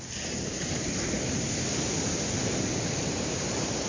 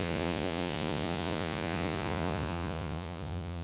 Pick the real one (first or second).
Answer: first